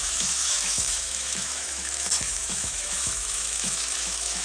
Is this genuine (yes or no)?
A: no